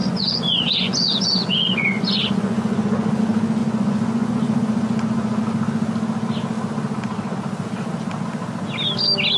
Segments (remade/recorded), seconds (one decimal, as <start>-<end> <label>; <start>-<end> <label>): 0.0-3.2 remade; 3.2-3.6 recorded; 3.6-5.4 remade; 5.4-9.4 recorded